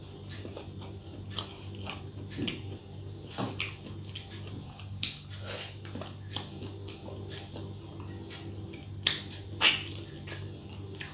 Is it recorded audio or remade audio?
recorded